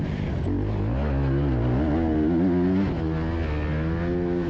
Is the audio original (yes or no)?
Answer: yes